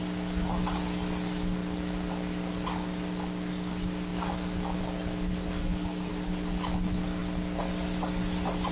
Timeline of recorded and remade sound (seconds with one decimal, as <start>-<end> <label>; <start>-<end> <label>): 0.0-5.6 recorded; 5.6-6.1 remade; 6.1-8.7 recorded